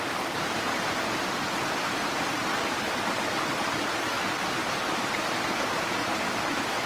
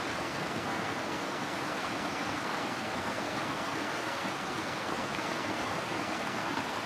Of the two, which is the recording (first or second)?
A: first